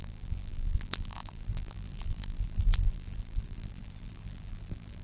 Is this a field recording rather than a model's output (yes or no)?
no